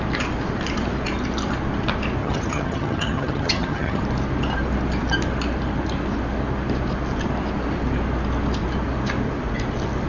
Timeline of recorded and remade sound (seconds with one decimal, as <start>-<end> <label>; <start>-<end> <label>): 0.0-2.2 recorded; 2.2-4.0 remade; 4.0-10.1 recorded